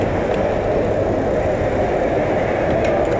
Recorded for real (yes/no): yes